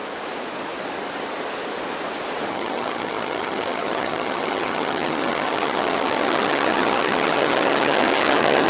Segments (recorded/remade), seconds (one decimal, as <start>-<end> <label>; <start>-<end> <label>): 0.0-2.5 recorded; 2.5-8.7 remade